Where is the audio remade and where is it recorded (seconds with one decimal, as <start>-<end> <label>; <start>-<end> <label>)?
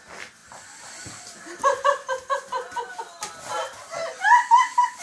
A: 0.0-3.5 recorded; 3.5-5.0 remade